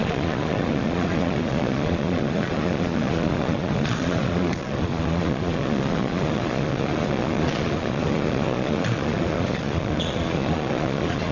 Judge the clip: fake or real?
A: fake